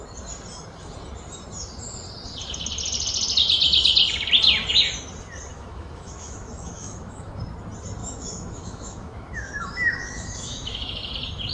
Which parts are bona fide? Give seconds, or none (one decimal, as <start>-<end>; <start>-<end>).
0.0-5.5; 7.4-8.0; 11.1-11.5